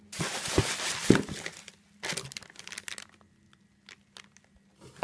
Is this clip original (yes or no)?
yes